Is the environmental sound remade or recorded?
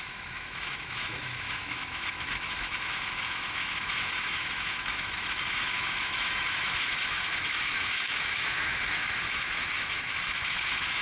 remade